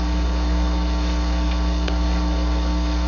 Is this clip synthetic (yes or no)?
yes